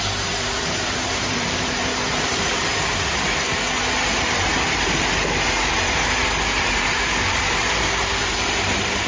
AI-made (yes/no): yes